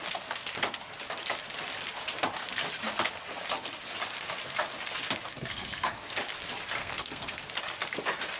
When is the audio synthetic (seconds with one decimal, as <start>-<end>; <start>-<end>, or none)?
5.3-6.1; 6.8-7.4